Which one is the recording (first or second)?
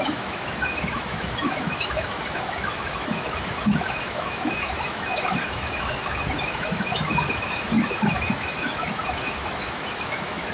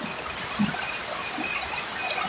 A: second